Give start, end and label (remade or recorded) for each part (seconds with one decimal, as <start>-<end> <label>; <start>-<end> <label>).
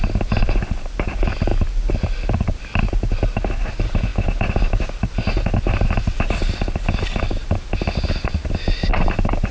0.0-9.5 recorded